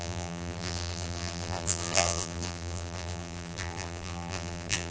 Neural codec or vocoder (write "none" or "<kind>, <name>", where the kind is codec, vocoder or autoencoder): vocoder, BigVGAN v2